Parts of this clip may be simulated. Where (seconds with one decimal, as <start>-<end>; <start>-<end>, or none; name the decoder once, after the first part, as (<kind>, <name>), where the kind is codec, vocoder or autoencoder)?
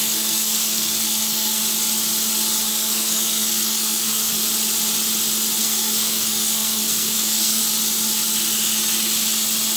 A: 0.0-1.6 (codec, SNAC); 2.6-4.4; 5.6-7.6